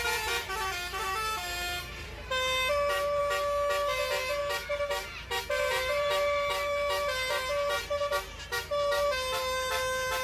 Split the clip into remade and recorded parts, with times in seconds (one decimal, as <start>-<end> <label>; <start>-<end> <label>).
0.0-3.2 remade; 3.2-4.4 recorded; 4.4-10.2 remade

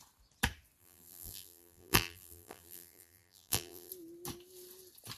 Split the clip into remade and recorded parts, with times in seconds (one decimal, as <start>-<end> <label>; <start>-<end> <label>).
0.0-0.8 recorded; 0.8-3.9 remade; 3.9-5.2 recorded